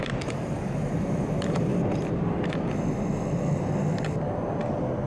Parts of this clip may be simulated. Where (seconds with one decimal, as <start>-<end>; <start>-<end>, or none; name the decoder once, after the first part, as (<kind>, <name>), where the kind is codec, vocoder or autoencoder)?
0.0-1.7 (vocoder, BigVGAN v2)